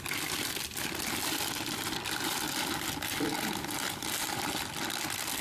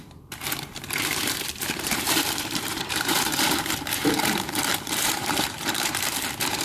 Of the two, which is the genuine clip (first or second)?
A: first